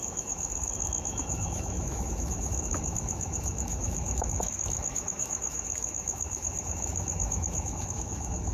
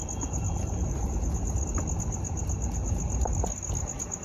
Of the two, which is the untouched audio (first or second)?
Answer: second